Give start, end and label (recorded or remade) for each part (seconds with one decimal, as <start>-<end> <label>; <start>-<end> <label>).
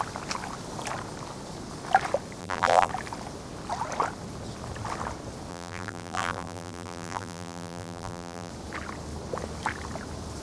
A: 0.0-2.4 recorded; 2.4-2.9 remade; 2.9-5.5 recorded; 5.5-8.5 remade; 8.5-10.4 recorded